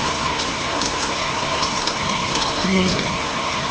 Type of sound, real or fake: fake